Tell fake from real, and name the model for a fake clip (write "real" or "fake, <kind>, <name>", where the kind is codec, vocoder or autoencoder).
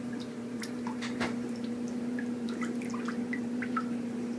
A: fake, vocoder, BigVGAN v2